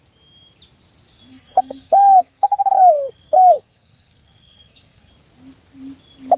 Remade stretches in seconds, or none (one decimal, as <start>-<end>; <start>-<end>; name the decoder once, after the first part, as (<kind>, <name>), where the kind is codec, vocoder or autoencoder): 1.3-5.1 (codec, SNAC)